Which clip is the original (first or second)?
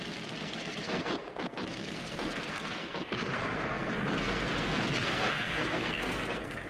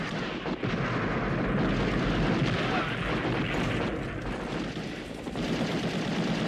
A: second